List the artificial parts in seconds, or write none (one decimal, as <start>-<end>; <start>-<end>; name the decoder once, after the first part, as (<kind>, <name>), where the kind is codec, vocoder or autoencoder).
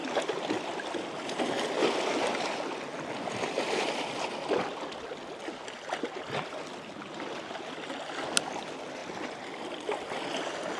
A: none